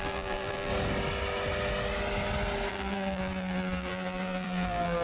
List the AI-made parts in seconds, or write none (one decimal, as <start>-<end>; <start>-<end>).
0.0-0.7; 2.7-5.0